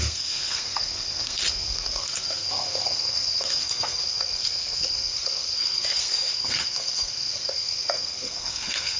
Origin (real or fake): fake